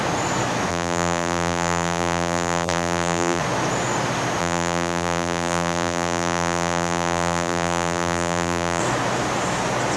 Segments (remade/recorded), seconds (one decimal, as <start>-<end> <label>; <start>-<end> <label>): 0.0-0.7 recorded; 0.7-3.4 remade; 3.4-4.4 recorded; 4.4-8.8 remade; 8.8-10.0 recorded